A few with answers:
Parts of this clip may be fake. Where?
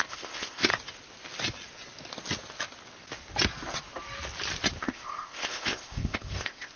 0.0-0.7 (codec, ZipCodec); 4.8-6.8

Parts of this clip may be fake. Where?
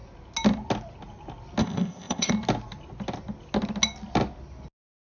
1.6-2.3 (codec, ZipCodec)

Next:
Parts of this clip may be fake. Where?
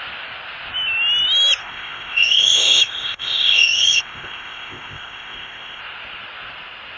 1.6-5.8 (codec, ZipCodec)